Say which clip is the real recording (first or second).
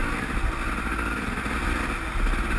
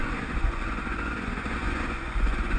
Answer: first